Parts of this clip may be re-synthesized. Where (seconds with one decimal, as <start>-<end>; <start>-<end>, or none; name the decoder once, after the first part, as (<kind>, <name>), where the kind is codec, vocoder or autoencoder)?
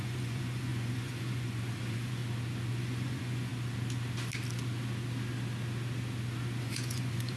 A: 0.0-2.2 (vocoder, Vocos); 2.7-3.5; 6.6-7.4